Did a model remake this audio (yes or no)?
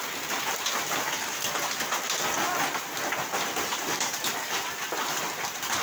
yes